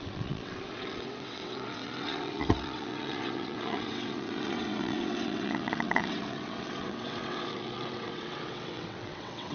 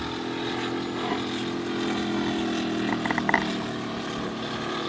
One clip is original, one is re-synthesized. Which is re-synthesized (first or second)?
first